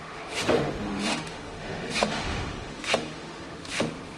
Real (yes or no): no